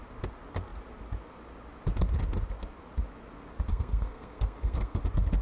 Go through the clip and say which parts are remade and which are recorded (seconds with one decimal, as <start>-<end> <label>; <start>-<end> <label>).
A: 0.0-3.7 recorded; 3.7-5.0 remade; 5.0-5.4 recorded